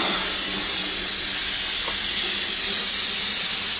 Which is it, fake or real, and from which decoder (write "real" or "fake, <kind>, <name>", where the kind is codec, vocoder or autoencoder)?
real